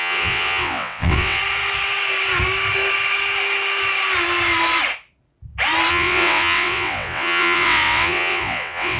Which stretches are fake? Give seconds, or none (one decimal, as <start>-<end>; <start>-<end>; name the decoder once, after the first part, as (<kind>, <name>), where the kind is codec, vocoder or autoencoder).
0.0-1.4 (vocoder, WaveNeXt); 5.9-9.0